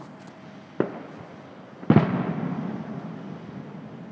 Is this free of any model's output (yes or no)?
yes